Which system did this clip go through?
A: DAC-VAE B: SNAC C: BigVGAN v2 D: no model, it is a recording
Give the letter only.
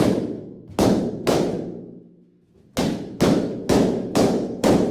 A